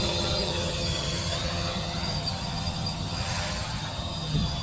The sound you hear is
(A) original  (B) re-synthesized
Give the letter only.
B